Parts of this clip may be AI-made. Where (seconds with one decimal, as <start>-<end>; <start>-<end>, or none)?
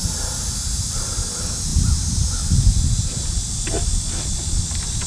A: none